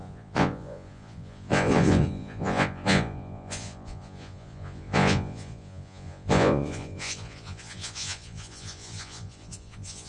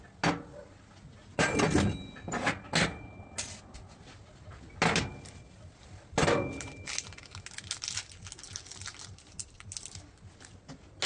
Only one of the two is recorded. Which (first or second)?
second